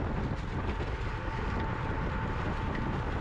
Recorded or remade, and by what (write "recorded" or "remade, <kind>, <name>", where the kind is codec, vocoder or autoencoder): recorded